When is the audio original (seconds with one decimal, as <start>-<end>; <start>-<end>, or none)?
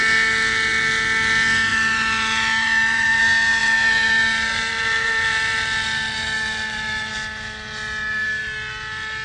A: 0.0-1.7; 3.2-3.6; 7.1-9.2